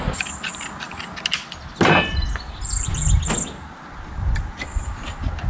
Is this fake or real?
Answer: real